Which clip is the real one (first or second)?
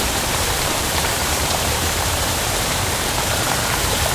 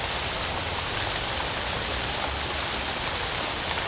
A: second